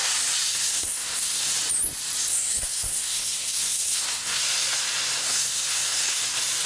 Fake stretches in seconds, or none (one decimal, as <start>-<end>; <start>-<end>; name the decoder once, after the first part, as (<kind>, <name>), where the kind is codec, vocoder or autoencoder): 0.5-1.5 (codec, SNAC); 2.3-4.4; 5.2-6.2